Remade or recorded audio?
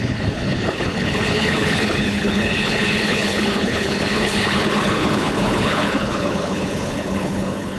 remade